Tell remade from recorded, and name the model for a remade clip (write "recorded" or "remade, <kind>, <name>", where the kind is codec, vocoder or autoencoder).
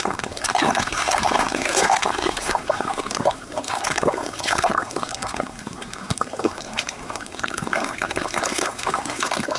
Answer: remade, codec, SNAC